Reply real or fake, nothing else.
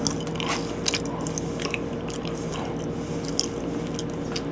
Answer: real